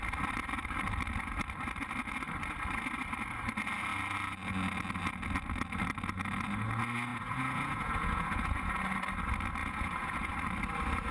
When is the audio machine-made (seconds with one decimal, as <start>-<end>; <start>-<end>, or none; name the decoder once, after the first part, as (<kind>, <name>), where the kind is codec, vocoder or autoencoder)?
7.1-8.8 (vocoder, Vocos); 9.6-10.3